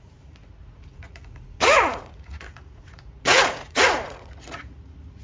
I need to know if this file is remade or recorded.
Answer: remade